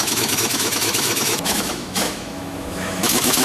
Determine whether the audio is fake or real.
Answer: fake